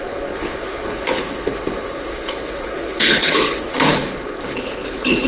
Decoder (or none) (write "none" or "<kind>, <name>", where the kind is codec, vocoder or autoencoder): codec, HILCodec